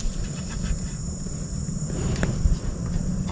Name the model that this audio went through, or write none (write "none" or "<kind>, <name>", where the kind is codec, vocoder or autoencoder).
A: none